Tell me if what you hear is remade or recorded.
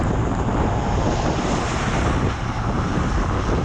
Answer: remade